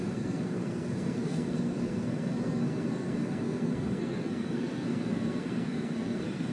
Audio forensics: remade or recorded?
remade